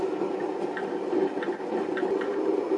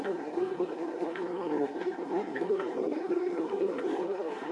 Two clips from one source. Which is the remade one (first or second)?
second